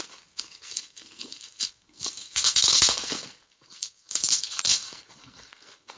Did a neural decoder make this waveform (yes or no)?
yes